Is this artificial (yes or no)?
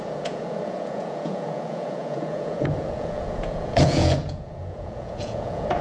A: yes